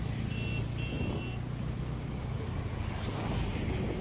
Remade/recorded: recorded